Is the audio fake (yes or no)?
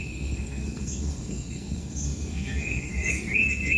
yes